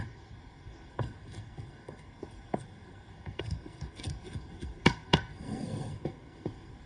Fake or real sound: fake